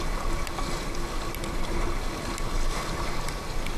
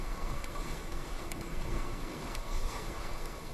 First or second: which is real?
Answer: first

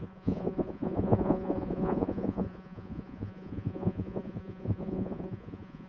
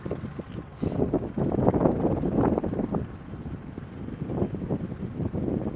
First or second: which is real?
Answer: second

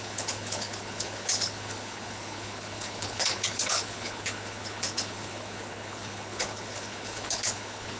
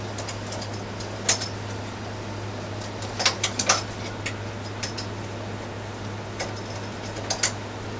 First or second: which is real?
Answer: second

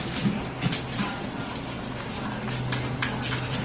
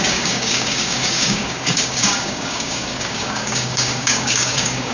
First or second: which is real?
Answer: first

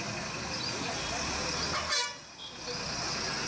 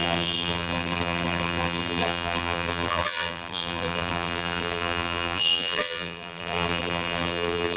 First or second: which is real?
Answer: first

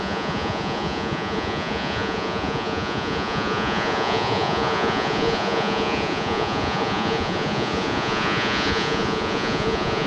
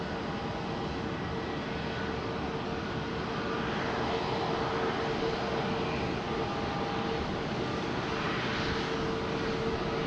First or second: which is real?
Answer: second